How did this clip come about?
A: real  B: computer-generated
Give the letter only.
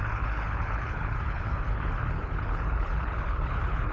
B